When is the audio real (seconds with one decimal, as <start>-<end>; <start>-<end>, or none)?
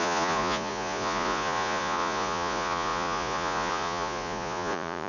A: none